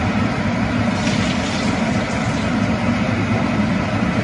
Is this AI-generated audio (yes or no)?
no